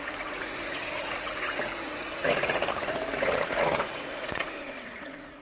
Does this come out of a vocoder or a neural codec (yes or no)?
yes